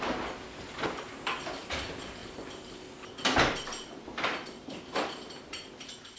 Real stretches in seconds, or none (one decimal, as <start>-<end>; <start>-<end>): 0.0-6.2